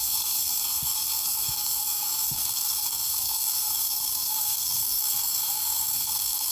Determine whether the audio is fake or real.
fake